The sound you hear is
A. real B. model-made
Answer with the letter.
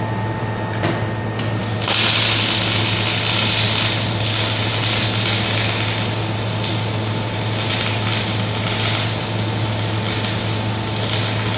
A